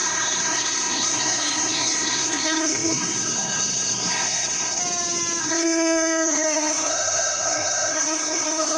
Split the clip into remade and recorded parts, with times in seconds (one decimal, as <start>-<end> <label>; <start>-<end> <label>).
0.0-4.8 remade; 4.8-5.4 recorded; 5.4-8.8 remade